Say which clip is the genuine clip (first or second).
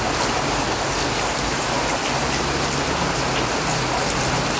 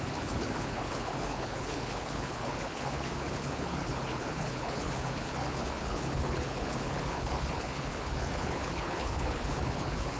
first